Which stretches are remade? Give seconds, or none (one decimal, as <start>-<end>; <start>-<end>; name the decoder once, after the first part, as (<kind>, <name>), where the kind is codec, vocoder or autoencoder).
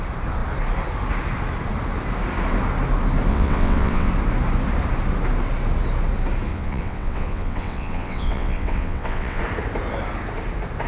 3.3-4.1 (vocoder, WaveNeXt); 6.5-9.4